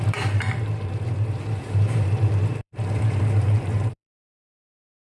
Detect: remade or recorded remade